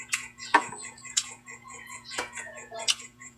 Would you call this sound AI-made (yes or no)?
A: yes